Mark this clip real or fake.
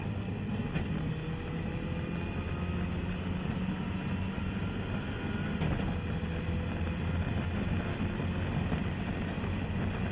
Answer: real